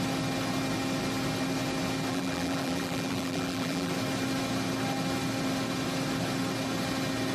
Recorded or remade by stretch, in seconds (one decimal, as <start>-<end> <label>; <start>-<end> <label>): 0.0-2.1 recorded; 2.1-3.9 remade; 3.9-7.3 recorded